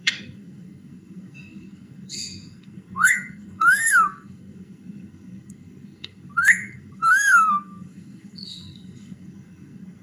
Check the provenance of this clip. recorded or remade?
remade